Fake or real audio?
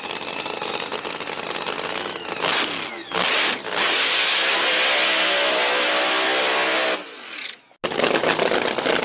real